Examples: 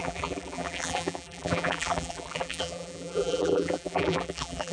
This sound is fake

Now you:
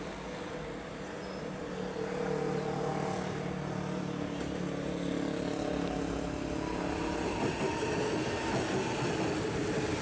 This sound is real